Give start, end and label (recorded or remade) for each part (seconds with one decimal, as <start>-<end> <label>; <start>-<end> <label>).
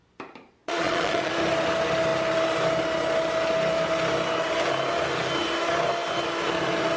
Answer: 0.0-0.6 recorded; 0.6-1.3 remade; 1.3-7.0 recorded